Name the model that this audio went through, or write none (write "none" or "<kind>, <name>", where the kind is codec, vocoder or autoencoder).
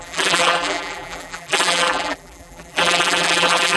vocoder, BigVGAN v2